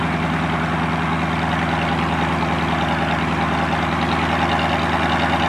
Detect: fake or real real